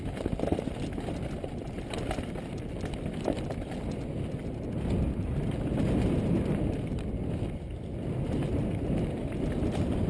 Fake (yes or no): no